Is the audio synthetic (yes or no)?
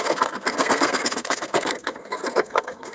yes